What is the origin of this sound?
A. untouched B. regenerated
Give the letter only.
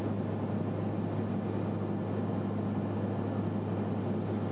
A